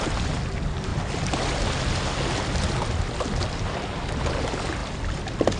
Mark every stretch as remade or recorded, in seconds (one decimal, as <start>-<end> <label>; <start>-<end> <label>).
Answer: 0.0-5.6 recorded